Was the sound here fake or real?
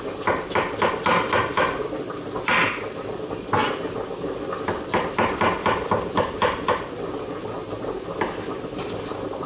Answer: real